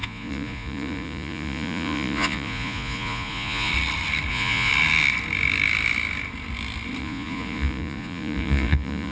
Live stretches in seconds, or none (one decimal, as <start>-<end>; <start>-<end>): 3.7-4.3; 4.7-7.0